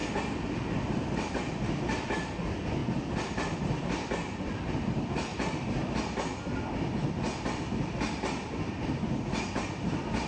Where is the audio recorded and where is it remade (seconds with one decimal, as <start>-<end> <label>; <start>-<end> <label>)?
0.0-10.3 recorded